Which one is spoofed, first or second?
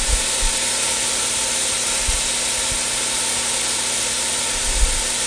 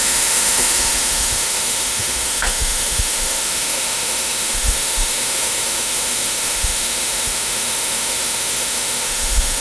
second